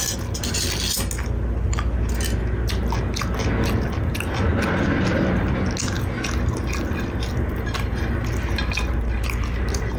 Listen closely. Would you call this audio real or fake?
real